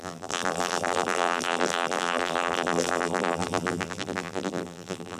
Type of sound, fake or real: fake